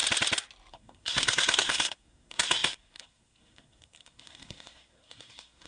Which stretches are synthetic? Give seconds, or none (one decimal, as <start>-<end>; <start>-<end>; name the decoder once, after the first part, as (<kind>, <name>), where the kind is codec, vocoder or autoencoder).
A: 0.7-5.7 (codec, SNAC)